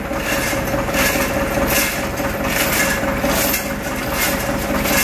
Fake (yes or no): no